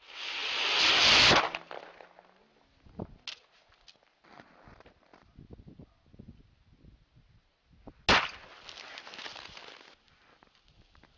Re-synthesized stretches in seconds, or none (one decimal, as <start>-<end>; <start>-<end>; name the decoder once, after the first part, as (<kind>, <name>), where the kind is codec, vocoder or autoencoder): 0.4-1.4 (vocoder, BigVGAN v2)